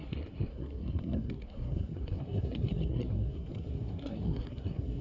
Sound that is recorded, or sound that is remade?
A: remade